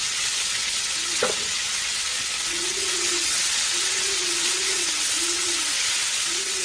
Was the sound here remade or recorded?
remade